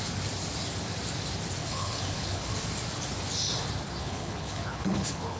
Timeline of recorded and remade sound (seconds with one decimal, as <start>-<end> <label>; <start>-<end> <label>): 0.0-1.6 recorded; 1.6-2.5 remade; 2.5-4.0 recorded; 4.0-5.4 remade